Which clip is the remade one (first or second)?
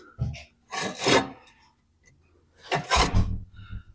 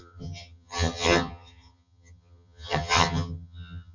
second